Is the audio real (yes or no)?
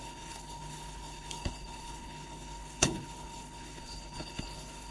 no